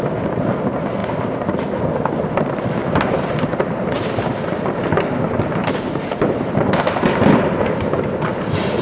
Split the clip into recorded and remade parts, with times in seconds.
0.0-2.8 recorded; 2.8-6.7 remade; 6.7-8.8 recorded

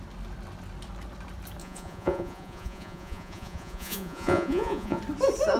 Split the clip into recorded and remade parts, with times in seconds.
0.0-1.6 recorded; 1.6-5.0 remade; 5.0-5.6 recorded

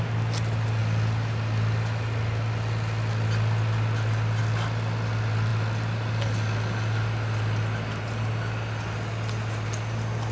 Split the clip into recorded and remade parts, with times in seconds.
0.0-10.3 recorded

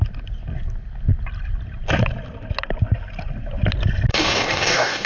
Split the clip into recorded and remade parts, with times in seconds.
0.0-4.1 recorded; 4.1-5.1 remade